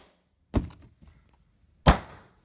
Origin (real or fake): real